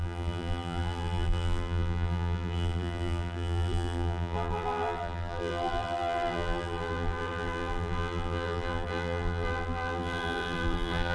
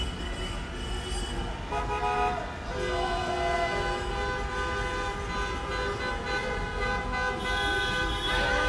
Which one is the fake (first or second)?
first